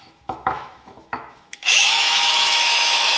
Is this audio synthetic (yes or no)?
yes